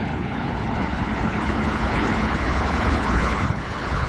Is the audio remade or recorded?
remade